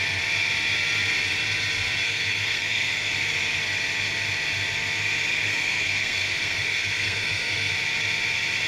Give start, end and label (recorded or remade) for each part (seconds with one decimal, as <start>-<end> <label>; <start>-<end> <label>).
0.0-2.0 recorded; 2.0-3.1 remade; 3.1-5.3 recorded; 5.3-7.7 remade; 7.7-8.7 recorded